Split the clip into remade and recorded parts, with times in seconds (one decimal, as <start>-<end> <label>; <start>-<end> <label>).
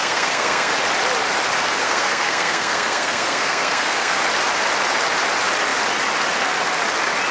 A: 0.0-0.7 remade; 0.7-1.8 recorded; 1.8-4.2 remade; 4.2-7.3 recorded